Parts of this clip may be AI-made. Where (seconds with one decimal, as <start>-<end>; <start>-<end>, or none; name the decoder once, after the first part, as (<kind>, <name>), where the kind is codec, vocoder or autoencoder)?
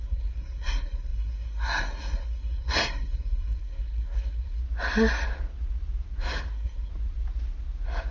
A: 0.0-4.6 (codec, SNAC); 6.5-6.9